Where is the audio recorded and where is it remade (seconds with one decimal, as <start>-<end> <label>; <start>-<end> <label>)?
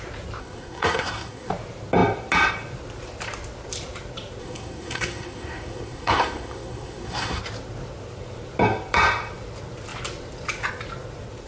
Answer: 0.0-0.4 recorded; 0.4-1.5 remade; 1.5-4.4 recorded; 4.4-7.4 remade; 7.4-11.5 recorded